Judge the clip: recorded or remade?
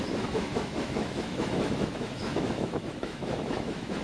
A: remade